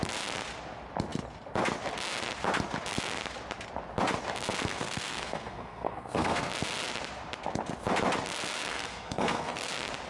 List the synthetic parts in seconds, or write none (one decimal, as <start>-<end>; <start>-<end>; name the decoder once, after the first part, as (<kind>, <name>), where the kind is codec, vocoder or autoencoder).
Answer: 4.7-6.5 (codec, SNAC); 8.7-9.7